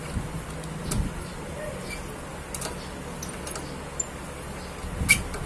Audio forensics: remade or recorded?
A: recorded